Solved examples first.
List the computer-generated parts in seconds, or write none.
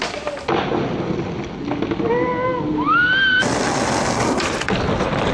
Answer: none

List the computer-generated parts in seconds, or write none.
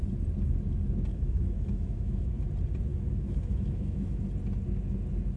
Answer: 1.1-2.3 (autoencoder, DAC-VAE); 2.9-4.2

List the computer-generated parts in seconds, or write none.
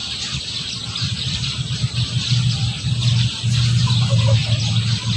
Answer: none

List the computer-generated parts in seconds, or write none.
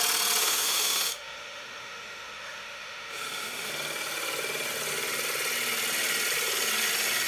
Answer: 0.4-3.7 (autoencoder, DAC-VAE)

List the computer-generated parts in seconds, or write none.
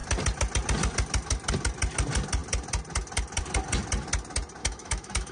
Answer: 4.6-5.3 (autoencoder, DAC-VAE)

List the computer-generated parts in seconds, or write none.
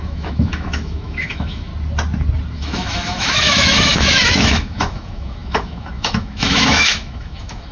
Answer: 0.0-1.7 (autoencoder, DAC-VAE); 2.5-7.7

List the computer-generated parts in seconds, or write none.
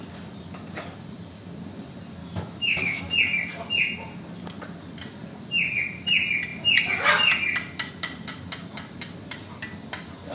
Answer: 2.2-3.0 (autoencoder, DAC-VAE)